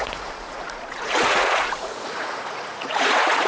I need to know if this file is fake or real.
fake